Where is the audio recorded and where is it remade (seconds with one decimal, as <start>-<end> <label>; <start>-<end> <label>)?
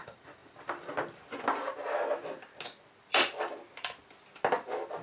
0.0-3.1 recorded; 3.1-4.0 remade; 4.0-5.0 recorded